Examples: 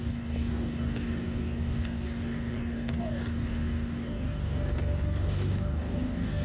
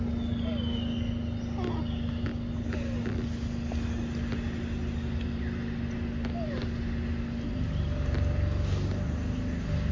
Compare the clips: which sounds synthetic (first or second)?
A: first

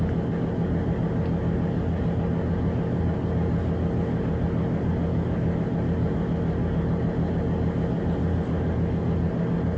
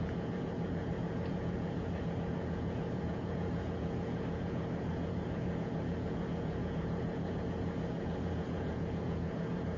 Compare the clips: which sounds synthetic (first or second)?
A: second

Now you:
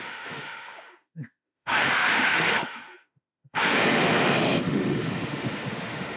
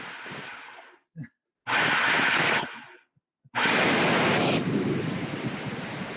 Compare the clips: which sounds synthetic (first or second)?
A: first